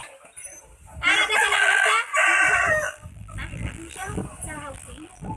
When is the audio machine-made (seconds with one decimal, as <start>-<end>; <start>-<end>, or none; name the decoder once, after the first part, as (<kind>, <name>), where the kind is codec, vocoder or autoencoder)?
1.4-2.1 (vocoder, BigVGAN v2); 2.7-4.2; 4.7-5.4

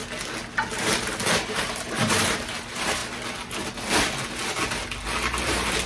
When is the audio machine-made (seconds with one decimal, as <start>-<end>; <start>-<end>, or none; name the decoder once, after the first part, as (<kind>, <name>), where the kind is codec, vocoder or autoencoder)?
0.7-3.0 (vocoder, BigVGAN v2); 5.4-5.9

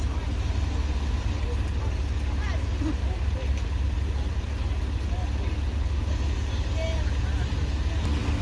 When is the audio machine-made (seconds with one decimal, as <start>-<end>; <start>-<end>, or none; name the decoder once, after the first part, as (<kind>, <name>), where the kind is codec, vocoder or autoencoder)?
none

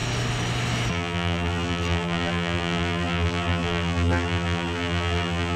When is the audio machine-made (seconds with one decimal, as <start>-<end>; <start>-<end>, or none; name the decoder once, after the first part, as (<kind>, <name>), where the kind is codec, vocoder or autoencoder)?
0.9-5.6 (vocoder, BigVGAN v2)